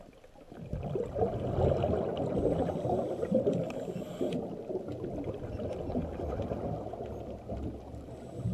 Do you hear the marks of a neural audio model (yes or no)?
no